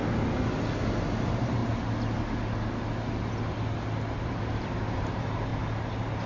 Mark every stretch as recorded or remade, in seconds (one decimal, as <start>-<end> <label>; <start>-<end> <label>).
0.0-1.2 recorded; 1.2-1.6 remade; 1.6-4.2 recorded; 4.2-5.5 remade; 5.5-6.3 recorded